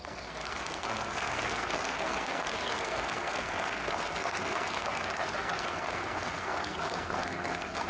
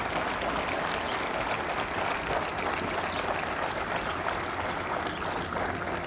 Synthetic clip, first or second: first